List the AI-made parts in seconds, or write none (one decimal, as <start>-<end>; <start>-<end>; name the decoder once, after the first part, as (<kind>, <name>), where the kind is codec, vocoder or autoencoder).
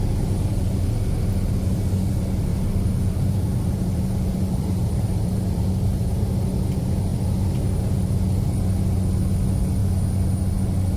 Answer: 2.5-6.3 (vocoder, BigVGAN v2)